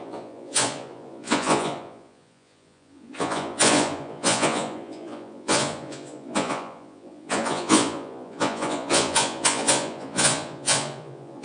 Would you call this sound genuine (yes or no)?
no